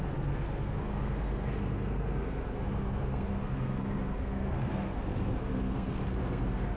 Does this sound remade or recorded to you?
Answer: remade